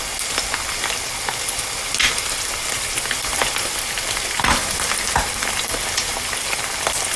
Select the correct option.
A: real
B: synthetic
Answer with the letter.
A